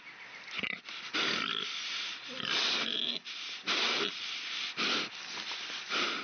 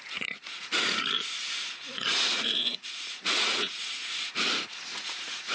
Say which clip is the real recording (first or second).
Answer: first